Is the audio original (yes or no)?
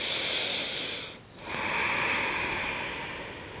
yes